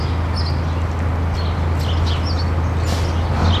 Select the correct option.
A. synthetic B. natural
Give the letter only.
B